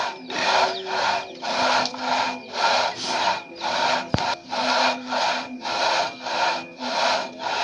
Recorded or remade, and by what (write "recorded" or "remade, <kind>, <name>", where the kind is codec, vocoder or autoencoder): recorded